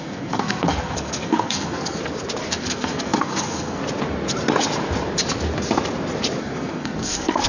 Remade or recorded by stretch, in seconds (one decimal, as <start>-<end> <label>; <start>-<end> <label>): 0.0-2.0 remade; 2.0-2.5 recorded; 2.5-3.8 remade; 3.8-6.4 recorded; 6.4-7.5 remade